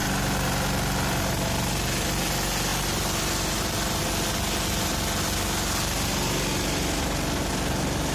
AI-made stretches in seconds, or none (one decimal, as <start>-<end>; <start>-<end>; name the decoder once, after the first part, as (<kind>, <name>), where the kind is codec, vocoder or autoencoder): none